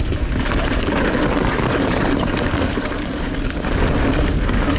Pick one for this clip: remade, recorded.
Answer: remade